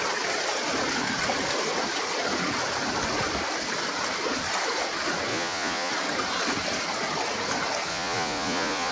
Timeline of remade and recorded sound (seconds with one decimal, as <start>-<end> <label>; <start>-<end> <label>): 0.0-5.3 recorded; 5.3-5.9 remade; 5.9-7.9 recorded; 7.9-8.9 remade